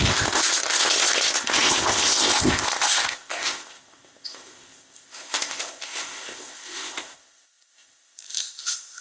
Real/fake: fake